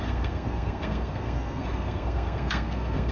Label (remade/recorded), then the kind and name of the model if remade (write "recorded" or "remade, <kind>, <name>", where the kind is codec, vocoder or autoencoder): remade, codec, SNAC